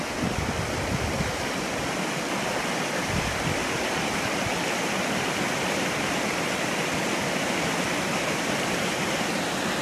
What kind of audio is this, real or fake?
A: real